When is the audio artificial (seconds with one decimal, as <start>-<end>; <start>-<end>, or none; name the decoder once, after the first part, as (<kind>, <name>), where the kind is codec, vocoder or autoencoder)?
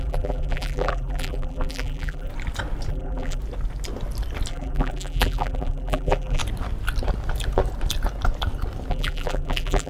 0.0-2.3 (vocoder, BigVGAN v2); 2.9-3.4; 4.5-6.4; 8.9-9.9